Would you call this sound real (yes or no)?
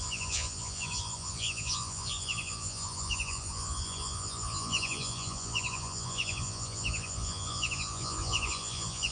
no